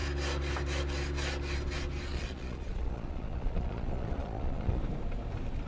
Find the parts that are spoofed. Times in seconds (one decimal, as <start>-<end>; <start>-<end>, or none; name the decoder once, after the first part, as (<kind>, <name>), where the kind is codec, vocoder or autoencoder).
2.1-4.8 (vocoder, Vocos)